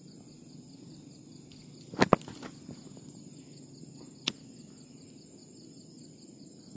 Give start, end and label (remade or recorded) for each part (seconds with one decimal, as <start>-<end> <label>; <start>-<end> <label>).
0.0-6.8 recorded